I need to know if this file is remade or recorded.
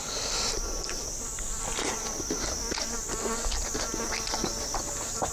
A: recorded